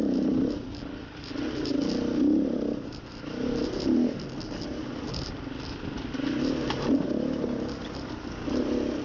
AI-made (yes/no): no